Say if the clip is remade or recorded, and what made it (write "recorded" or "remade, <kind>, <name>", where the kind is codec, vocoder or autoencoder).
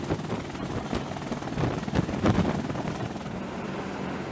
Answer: recorded